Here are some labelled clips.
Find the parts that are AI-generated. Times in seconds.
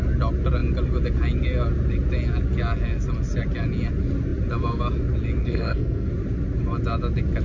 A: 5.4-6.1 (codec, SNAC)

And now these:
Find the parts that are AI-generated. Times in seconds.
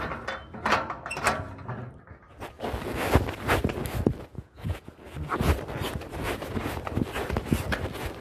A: 4.3-4.9 (vocoder, Vocos)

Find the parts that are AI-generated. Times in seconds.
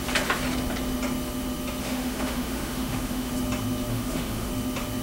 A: 1.8-3.3 (autoencoder, DAC-VAE); 3.9-4.5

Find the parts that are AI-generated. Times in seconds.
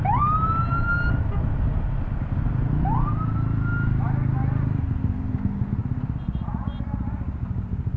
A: none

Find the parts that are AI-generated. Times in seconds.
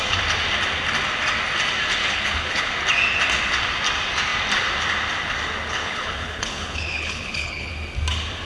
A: 2.0-2.7 (codec, HILCodec); 5.8-7.7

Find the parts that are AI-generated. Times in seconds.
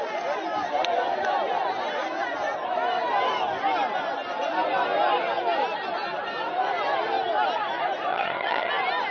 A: 8.1-8.7 (vocoder, HiFi-GAN)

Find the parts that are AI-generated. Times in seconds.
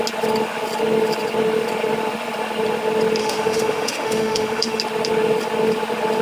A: 3.2-4.8 (autoencoder, DAC-VAE)